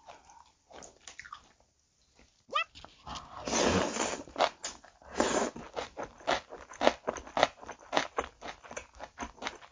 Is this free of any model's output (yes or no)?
yes